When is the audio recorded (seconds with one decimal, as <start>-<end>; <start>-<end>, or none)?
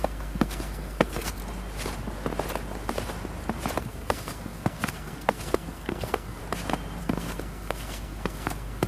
1.4-3.8; 6.4-7.0